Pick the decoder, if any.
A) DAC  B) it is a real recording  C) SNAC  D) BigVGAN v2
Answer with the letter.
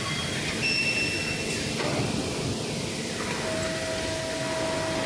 B